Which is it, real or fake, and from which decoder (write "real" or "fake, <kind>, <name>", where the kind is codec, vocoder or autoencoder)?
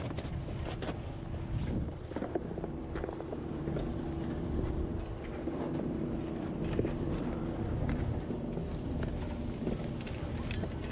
fake, vocoder, BigVGAN v2